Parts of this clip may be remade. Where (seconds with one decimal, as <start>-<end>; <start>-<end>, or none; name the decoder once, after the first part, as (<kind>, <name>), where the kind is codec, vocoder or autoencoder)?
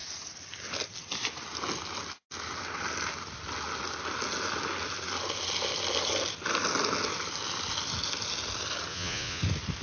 8.9-9.4 (vocoder, Vocos)